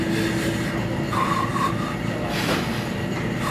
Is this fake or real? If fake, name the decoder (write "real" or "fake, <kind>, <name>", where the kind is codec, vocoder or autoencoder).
real